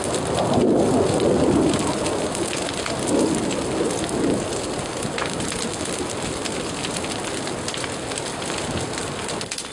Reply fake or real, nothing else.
real